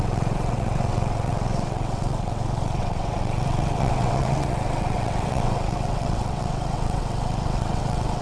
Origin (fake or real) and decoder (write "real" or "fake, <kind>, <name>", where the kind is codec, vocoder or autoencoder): fake, vocoder, WaveNeXt